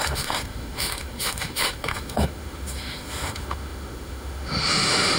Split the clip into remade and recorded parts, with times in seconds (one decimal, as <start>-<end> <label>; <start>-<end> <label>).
0.0-5.2 remade